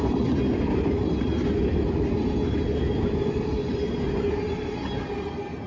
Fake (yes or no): no